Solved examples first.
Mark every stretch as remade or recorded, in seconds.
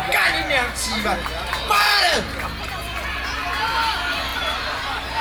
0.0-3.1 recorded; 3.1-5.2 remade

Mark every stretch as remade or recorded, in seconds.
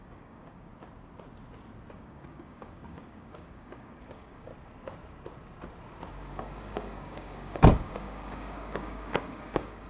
0.0-0.7 remade; 0.7-1.9 recorded; 1.9-4.5 remade; 4.5-6.1 recorded; 6.1-9.9 remade